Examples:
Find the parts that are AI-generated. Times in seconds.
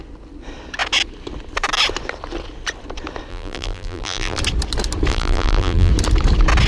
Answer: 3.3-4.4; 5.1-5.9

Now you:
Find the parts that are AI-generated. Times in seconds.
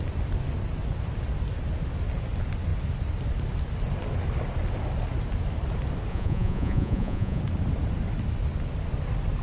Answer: 6.1-7.4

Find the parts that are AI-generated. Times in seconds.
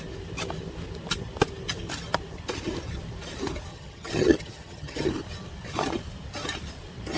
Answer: 3.7-5.1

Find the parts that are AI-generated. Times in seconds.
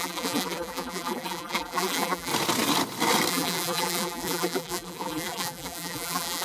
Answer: 0.0-2.3; 3.3-6.4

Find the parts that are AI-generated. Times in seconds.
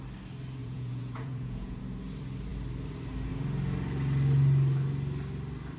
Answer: 0.6-1.8